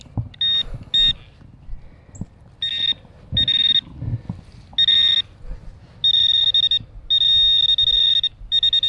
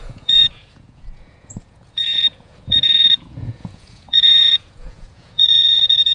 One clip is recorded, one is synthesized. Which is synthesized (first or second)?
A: second